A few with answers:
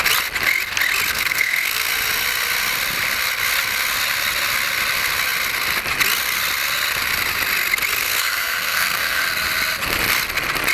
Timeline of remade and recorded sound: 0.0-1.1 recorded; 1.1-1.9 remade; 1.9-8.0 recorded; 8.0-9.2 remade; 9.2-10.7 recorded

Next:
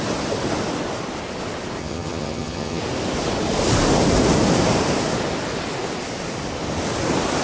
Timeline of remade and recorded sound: 0.0-1.8 recorded; 1.8-2.8 remade; 2.8-7.4 recorded

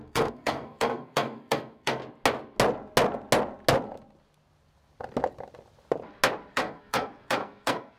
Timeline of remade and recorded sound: 0.0-2.0 remade; 2.0-6.5 recorded; 6.5-8.0 remade

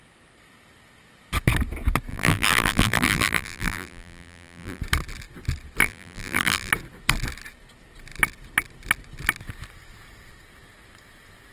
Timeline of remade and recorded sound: 0.0-2.1 recorded; 2.1-4.8 remade; 4.8-5.8 recorded; 5.8-6.7 remade; 6.7-11.5 recorded

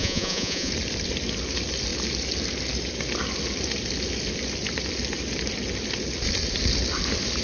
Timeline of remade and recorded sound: 0.0-0.7 remade; 0.7-7.4 recorded

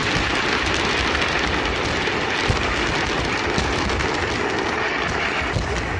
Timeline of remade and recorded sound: 0.0-6.0 recorded

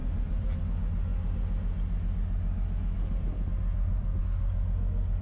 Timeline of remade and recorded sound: 0.0-0.6 remade; 0.6-5.2 recorded